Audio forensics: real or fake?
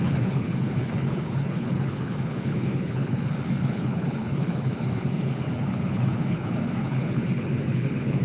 fake